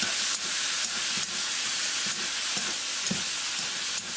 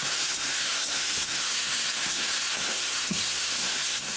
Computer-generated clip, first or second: second